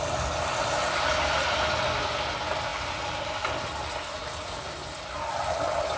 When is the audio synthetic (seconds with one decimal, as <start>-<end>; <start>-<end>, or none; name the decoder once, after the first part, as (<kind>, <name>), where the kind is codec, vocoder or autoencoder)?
none